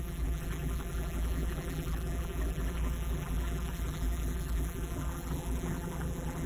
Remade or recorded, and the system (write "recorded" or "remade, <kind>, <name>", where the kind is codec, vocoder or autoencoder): remade, vocoder, BigVGAN v2